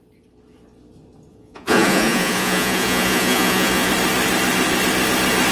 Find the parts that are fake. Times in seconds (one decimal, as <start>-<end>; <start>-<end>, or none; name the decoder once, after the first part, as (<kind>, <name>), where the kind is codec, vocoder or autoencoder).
1.3-3.9 (vocoder, Vocos)